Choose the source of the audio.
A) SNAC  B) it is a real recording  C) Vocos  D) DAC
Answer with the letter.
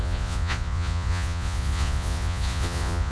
C